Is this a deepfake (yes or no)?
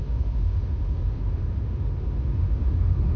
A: yes